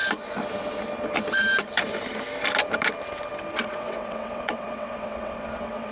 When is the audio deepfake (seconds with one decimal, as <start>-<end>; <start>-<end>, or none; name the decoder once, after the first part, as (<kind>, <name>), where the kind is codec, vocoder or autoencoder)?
3.5-5.9 (vocoder, WaveNeXt)